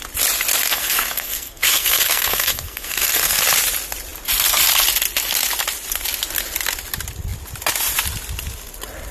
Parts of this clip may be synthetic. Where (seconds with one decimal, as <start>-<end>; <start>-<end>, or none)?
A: 0.7-3.4